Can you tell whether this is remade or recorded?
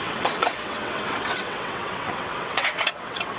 remade